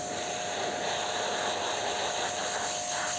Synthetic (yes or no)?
no